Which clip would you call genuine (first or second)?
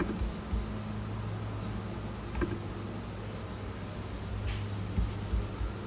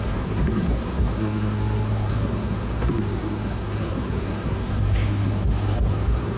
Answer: first